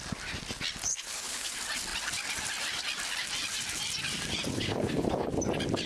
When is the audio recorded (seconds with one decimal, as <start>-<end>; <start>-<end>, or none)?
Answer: 0.0-0.9; 1.5-4.5; 5.3-5.9